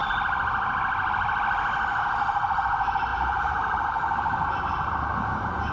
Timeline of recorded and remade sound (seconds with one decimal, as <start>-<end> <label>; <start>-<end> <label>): 0.0-3.1 recorded; 3.1-5.7 remade